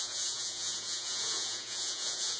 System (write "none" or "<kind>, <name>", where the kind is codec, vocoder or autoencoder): vocoder, Vocos